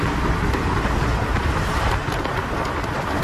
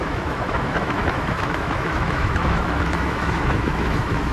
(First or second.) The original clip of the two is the first